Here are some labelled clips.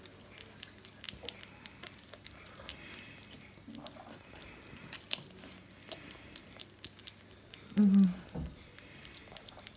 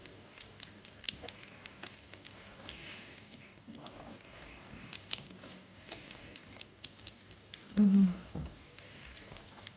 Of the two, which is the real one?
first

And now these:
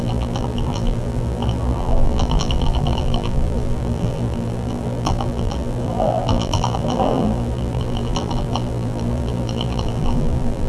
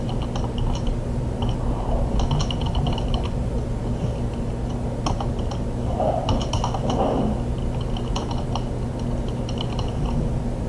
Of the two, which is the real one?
second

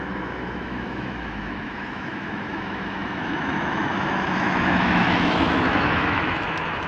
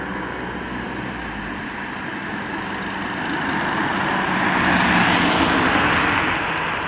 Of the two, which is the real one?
second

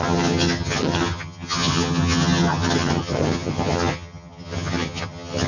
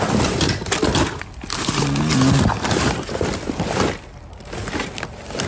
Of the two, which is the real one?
second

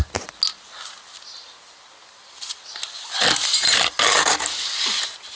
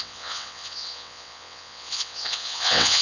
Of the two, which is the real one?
first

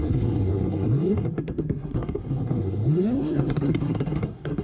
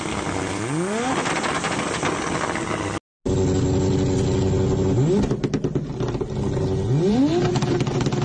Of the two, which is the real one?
second